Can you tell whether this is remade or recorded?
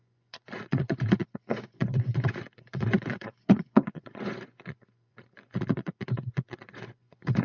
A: remade